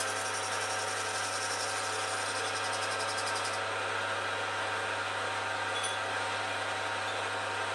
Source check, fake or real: real